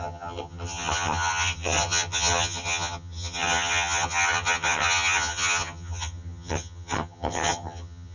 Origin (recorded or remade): remade